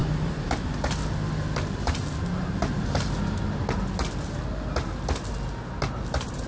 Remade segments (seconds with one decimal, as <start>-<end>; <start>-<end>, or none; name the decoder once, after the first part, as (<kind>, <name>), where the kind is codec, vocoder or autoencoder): none